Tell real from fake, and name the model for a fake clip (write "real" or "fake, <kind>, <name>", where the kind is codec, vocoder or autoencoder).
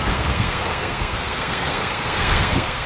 fake, codec, SNAC